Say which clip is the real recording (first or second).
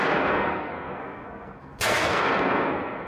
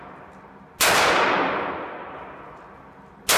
second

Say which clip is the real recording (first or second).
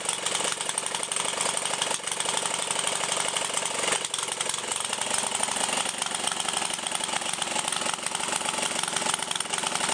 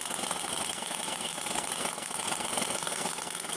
first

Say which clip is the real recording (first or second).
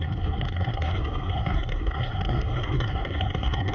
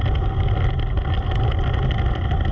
second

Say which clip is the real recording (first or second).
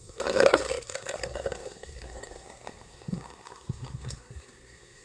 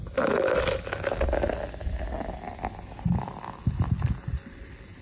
second